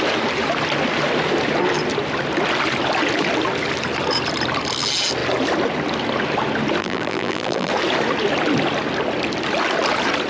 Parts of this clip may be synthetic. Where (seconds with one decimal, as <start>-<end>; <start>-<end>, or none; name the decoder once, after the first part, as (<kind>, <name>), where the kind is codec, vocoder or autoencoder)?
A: 6.8-7.7 (vocoder, BigVGAN v2)